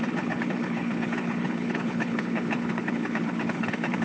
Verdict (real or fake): fake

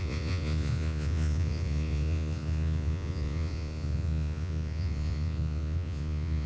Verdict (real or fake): fake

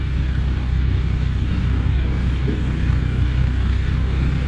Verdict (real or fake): fake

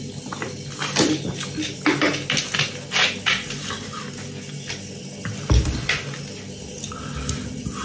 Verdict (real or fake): real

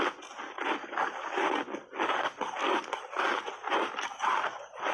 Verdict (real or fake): real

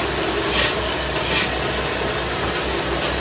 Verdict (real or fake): real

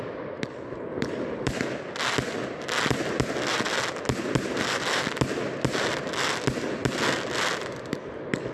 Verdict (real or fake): real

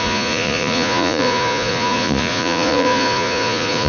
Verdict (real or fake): fake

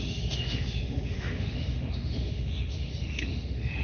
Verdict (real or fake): fake